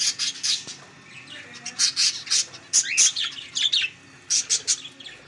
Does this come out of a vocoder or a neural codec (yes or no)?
no